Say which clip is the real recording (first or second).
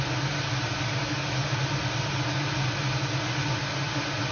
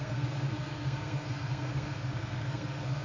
first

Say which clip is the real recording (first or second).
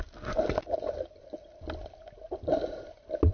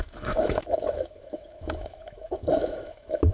first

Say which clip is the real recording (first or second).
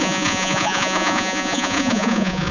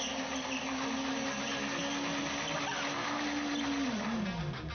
second